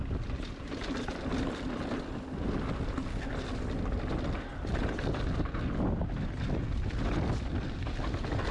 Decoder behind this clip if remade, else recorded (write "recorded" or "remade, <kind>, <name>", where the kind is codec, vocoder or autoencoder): recorded